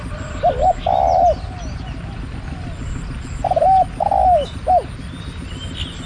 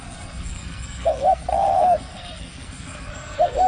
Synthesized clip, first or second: second